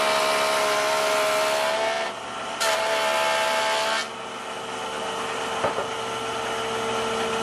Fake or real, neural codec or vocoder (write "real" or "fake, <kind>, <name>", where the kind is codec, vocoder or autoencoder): real